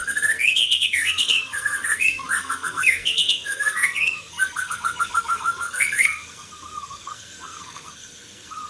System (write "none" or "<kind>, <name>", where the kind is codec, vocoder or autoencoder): codec, SNAC